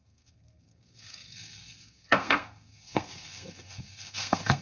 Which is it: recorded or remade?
remade